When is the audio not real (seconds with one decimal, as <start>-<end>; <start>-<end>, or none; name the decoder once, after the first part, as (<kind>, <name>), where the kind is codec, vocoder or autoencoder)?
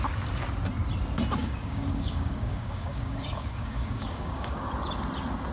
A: 1.4-4.7 (codec, DAC)